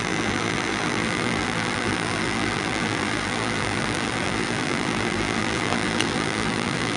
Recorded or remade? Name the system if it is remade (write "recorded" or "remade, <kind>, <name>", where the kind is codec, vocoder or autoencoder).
remade, vocoder, BigVGAN v2